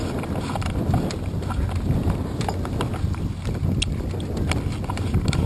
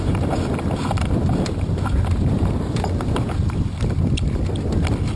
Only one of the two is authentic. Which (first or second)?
first